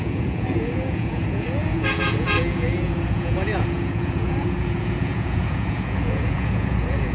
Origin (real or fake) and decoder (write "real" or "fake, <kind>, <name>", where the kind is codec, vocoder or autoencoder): fake, vocoder, Vocos